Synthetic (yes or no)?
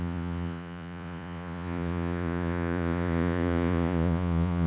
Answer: yes